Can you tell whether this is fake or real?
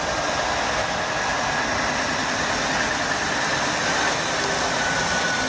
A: real